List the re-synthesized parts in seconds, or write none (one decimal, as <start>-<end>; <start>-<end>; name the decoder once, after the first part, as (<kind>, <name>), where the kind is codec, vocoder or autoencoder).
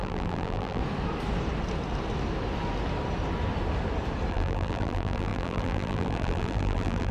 0.0-0.8 (vocoder, BigVGAN v2); 4.3-7.1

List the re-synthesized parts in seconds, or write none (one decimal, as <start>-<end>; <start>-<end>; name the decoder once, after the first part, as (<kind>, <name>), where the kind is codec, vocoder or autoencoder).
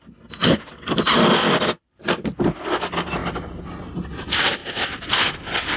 0.0-3.2 (vocoder, BigVGAN v2); 3.8-4.6; 5.3-5.8